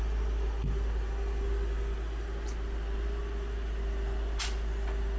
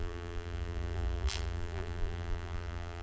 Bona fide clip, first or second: first